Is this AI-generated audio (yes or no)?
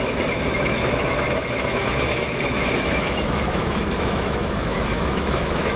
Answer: yes